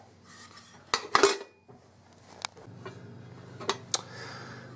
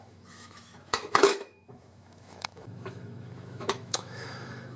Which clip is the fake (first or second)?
second